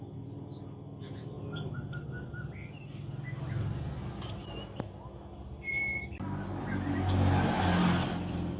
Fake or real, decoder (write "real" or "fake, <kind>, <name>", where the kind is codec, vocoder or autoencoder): real